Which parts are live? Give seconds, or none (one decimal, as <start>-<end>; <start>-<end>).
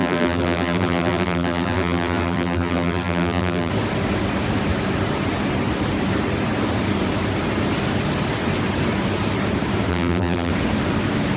3.7-9.9; 10.5-11.4